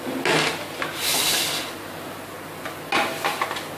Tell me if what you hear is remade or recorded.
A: recorded